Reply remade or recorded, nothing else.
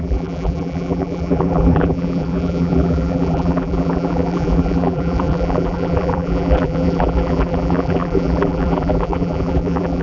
remade